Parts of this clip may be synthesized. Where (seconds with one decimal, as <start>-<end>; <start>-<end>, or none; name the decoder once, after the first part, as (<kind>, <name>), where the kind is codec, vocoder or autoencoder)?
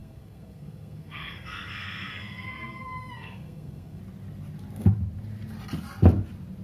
0.0-4.0 (codec, SNAC)